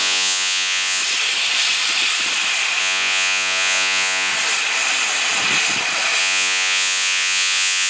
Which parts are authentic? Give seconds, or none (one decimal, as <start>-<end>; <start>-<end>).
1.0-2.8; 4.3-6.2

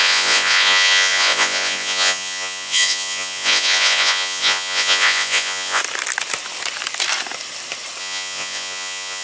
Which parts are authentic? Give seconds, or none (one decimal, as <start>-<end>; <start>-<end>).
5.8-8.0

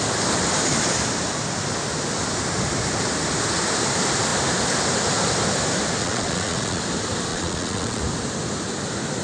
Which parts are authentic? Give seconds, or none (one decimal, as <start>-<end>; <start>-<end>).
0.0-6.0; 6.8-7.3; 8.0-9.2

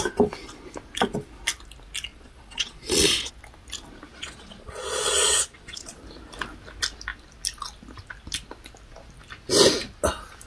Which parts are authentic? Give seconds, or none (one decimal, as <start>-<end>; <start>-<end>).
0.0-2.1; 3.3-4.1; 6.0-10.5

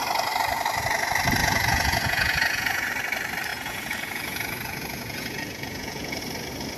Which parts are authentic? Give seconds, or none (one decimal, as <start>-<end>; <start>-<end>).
0.0-1.4; 2.9-3.5; 6.2-6.8